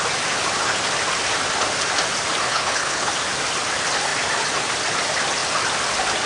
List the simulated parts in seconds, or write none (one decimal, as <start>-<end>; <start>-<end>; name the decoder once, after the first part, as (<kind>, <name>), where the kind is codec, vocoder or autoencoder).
2.5-3.1 (codec, HILCodec)